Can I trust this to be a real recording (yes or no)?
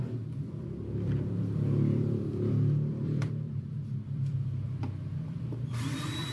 no